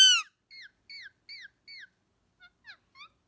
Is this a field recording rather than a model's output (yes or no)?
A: yes